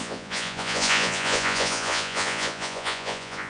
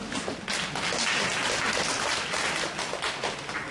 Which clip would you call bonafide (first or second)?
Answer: second